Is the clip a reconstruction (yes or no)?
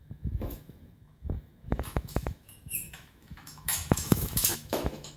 yes